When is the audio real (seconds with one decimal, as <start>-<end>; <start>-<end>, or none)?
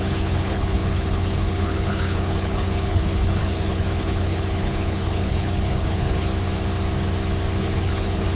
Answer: 6.3-7.6